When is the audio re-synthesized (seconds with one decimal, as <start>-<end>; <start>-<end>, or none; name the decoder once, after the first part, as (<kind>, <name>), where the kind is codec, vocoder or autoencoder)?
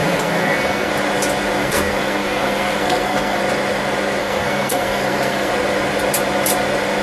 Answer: 0.0-0.9 (codec, SNAC); 1.6-3.4; 4.2-5.5